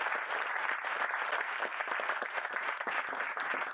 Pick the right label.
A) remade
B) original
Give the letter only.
B